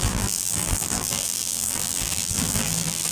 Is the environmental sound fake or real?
fake